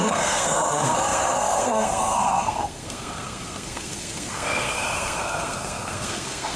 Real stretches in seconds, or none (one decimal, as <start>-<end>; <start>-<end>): none